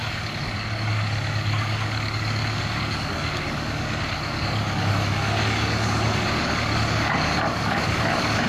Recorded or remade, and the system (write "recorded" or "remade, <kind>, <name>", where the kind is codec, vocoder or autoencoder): remade, codec, DAC